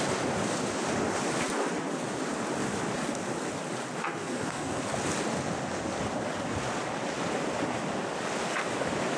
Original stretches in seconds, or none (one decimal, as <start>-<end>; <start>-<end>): 0.0-4.0; 4.8-9.2